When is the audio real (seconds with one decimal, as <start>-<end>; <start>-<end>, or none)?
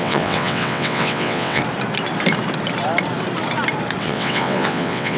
1.6-4.0